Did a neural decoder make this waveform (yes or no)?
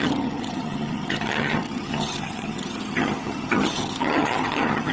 yes